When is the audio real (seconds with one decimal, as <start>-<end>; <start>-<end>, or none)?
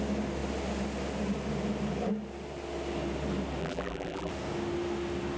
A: 0.0-3.6; 4.3-5.4